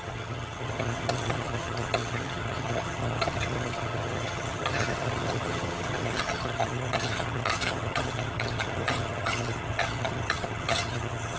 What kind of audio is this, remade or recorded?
remade